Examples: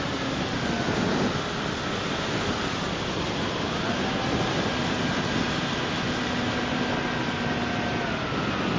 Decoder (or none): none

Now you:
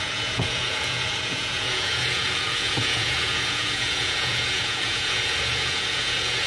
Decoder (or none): vocoder, Vocos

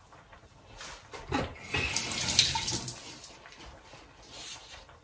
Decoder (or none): none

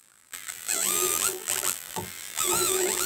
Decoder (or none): vocoder, BigVGAN v2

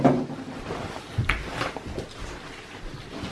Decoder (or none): none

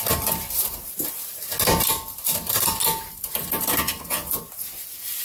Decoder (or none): none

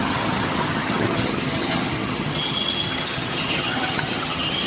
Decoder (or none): vocoder, HiFi-GAN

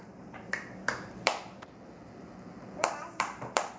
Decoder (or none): vocoder, BigVGAN v2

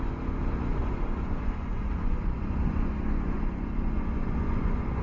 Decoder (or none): vocoder, Vocos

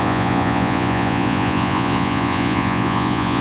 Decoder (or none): vocoder, Vocos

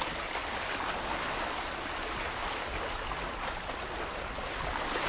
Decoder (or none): none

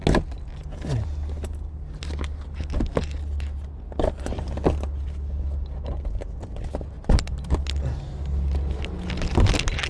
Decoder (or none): none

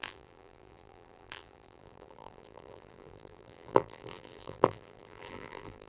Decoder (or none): vocoder, BigVGAN v2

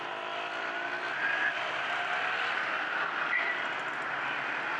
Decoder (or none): none